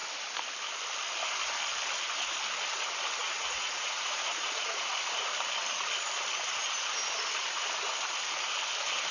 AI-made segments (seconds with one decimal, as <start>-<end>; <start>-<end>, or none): 3.2-4.9